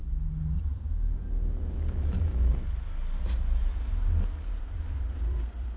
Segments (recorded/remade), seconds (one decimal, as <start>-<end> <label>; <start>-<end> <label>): 0.0-0.7 recorded; 0.7-2.5 remade; 2.5-4.5 recorded; 4.5-5.8 remade